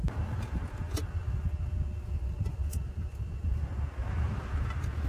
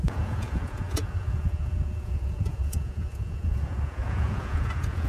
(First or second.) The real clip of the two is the first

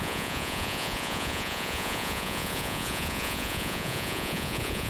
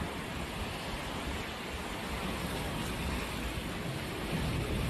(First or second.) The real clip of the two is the second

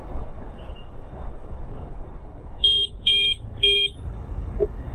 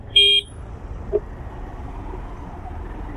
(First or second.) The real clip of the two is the second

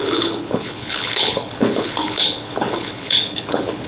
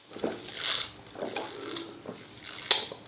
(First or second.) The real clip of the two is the second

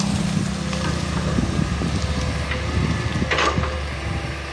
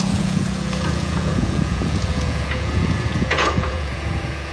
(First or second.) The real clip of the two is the first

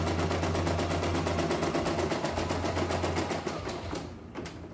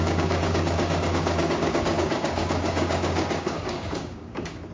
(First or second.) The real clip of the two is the first